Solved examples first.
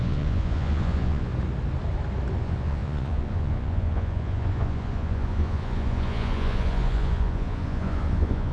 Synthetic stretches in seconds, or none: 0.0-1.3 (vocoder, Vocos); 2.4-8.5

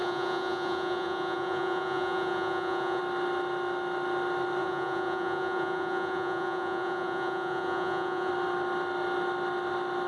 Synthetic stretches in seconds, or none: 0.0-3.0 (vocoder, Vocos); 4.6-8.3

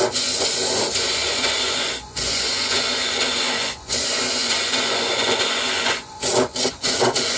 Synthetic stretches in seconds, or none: 0.0-7.4 (vocoder, Vocos)

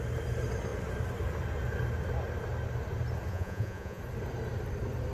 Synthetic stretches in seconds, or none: 3.3-4.0 (vocoder, Vocos)

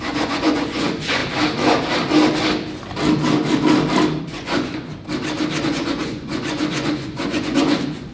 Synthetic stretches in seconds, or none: 0.0-1.2 (vocoder, Vocos); 4.2-4.9; 5.6-8.1